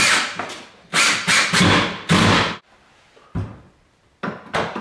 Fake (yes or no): no